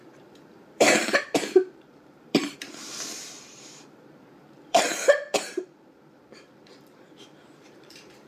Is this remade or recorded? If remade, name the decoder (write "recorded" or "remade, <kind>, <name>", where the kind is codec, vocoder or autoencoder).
remade, vocoder, BigVGAN v2